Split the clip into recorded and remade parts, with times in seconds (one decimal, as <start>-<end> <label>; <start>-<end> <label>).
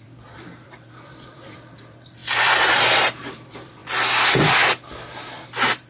0.0-3.8 remade; 3.8-4.4 recorded; 4.4-5.9 remade